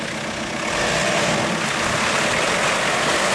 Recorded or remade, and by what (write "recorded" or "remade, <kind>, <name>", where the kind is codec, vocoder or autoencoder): recorded